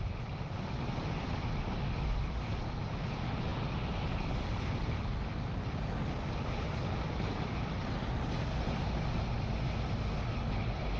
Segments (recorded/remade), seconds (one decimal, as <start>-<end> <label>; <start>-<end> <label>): 0.0-11.0 recorded